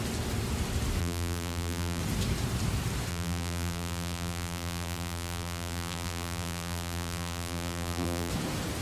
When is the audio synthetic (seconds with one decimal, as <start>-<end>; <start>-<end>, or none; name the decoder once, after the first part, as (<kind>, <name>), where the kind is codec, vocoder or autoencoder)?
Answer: 1.0-2.0 (vocoder, BigVGAN v2); 3.1-8.3

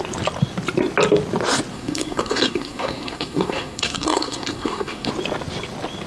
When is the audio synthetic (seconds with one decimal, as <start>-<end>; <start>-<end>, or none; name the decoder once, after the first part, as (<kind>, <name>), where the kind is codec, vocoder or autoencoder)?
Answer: 1.7-5.1 (codec, SNAC)

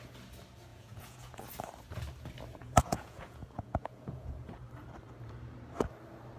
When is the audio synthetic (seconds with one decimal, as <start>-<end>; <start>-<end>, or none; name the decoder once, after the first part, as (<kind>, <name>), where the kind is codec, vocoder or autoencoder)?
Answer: 0.7-1.4 (vocoder, Vocos); 2.6-4.5

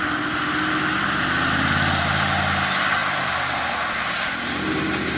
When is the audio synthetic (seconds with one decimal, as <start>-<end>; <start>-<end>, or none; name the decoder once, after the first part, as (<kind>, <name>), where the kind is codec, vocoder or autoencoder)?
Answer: none

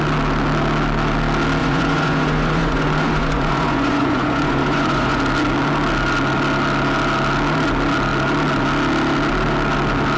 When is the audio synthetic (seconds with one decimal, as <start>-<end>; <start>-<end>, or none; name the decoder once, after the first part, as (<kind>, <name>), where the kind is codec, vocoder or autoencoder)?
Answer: 1.6-5.2 (vocoder, Vocos)

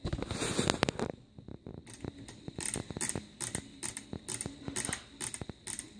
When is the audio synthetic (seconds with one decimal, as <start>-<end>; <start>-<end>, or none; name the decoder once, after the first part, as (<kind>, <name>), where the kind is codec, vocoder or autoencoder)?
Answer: none

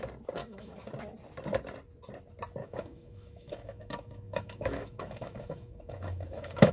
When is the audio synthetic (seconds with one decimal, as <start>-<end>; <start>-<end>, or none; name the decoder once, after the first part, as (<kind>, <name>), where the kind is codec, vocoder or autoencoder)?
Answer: 0.4-0.9 (autoencoder, DAC-VAE); 2.6-6.7

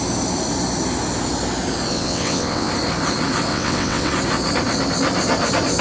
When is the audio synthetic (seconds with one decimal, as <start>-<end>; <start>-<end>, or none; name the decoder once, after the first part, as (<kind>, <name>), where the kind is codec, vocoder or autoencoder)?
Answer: 1.9-2.7 (vocoder, WaveNeXt); 3.5-4.1